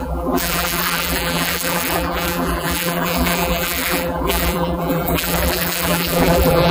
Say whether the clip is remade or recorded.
remade